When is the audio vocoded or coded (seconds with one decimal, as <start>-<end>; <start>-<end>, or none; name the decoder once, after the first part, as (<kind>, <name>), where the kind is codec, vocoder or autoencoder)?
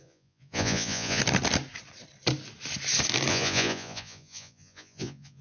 0.0-1.2 (vocoder, Vocos); 3.3-5.4